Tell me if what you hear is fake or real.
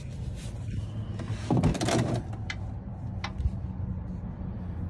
real